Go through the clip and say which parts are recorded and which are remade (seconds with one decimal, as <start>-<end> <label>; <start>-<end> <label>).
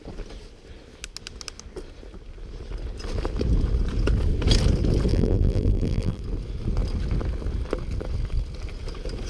0.0-5.1 recorded; 5.1-6.2 remade; 6.2-9.3 recorded